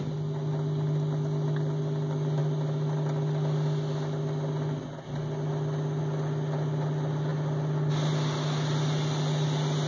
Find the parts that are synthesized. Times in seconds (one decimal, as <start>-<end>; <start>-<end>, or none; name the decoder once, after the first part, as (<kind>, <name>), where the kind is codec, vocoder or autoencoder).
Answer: none